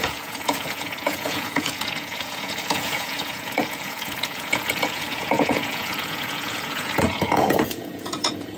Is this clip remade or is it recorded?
remade